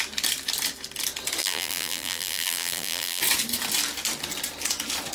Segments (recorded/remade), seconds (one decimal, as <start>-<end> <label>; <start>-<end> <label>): 0.0-1.4 recorded; 1.4-3.2 remade; 3.2-5.1 recorded